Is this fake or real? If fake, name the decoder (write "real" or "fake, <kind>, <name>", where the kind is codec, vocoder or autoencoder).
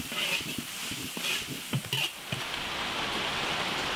real